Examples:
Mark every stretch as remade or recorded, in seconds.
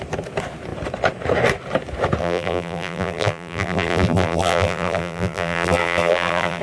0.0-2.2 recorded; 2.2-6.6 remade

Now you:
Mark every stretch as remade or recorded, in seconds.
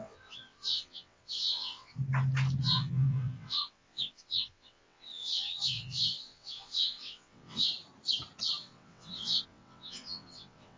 0.0-2.0 remade; 2.0-2.6 recorded; 2.6-7.7 remade; 7.7-8.6 recorded; 8.6-10.8 remade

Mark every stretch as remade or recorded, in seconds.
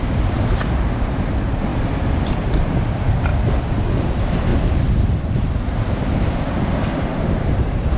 0.0-1.7 remade; 1.7-2.3 recorded; 2.3-3.3 remade; 3.3-4.0 recorded; 4.0-8.0 remade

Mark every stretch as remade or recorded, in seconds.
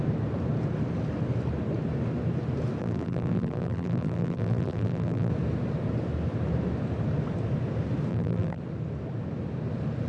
0.0-2.8 recorded; 2.8-5.3 remade; 5.3-8.1 recorded; 8.1-8.6 remade; 8.6-10.1 recorded